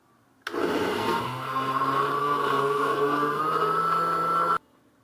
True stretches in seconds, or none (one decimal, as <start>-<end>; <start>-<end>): 0.0-0.6; 1.8-2.2; 3.4-5.0